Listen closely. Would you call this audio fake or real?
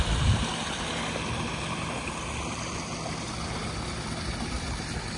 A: real